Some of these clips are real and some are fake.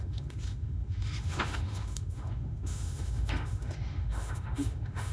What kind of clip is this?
fake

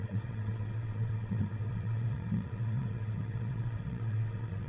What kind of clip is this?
fake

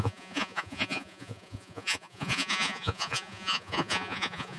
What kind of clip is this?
fake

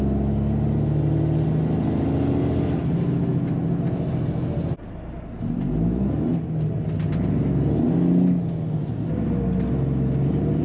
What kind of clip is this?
real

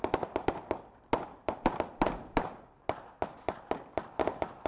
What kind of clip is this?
real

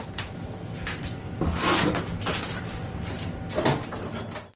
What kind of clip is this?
real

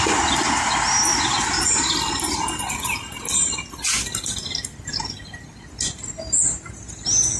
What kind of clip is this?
real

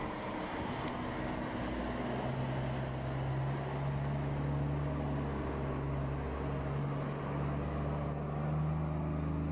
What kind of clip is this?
real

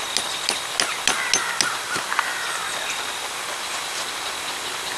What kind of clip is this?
real